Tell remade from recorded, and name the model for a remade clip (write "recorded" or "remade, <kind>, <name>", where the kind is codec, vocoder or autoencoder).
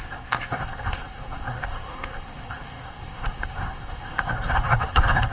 remade, codec, SNAC